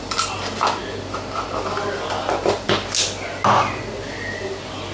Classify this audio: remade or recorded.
recorded